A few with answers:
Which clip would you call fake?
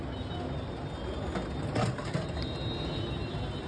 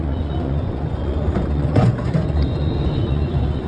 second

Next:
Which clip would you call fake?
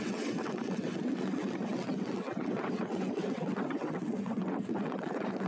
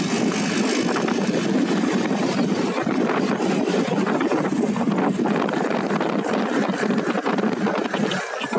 first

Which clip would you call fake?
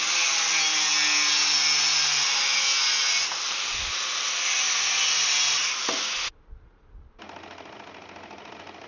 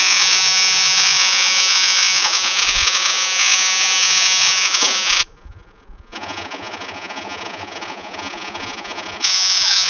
second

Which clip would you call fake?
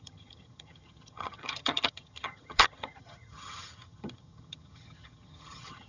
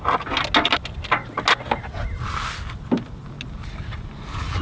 first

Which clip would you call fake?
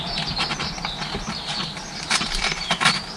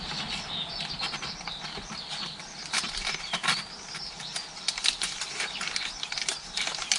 second